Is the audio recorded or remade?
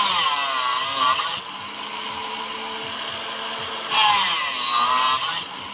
recorded